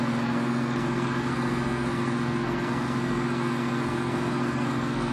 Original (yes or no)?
no